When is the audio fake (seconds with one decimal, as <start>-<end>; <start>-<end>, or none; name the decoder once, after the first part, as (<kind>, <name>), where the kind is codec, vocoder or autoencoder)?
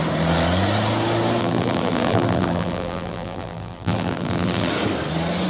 1.4-4.7 (vocoder, BigVGAN v2)